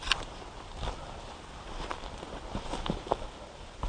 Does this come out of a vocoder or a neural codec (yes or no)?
no